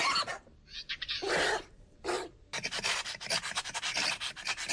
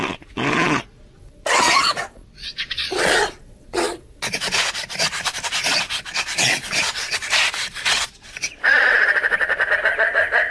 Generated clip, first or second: second